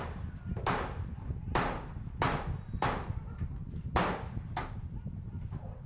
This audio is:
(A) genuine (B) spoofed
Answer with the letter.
A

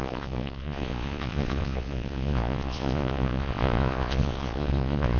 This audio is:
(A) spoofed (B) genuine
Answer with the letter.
A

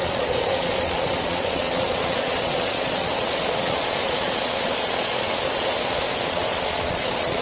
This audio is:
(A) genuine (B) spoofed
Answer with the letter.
B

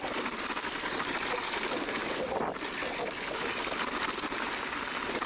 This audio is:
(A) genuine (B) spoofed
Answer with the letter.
A